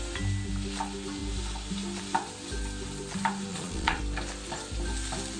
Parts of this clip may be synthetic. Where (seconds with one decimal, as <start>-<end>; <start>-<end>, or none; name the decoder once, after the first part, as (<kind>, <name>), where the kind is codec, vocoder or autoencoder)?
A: 3.5-4.0 (vocoder, Vocos)